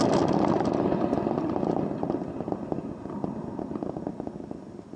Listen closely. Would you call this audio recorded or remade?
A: recorded